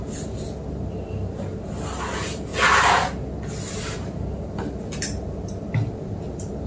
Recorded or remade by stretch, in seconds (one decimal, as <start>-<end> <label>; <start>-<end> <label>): 0.0-6.7 recorded